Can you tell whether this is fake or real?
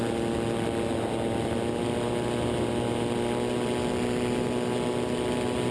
real